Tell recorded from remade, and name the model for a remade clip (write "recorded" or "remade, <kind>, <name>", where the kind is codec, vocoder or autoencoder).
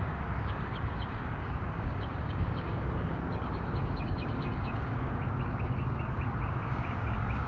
remade, codec, DAC